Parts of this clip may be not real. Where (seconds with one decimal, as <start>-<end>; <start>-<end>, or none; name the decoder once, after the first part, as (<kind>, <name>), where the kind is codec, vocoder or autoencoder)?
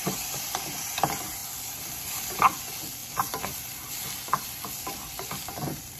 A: none